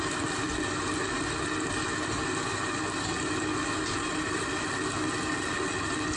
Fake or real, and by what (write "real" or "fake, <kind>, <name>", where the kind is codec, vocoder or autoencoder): real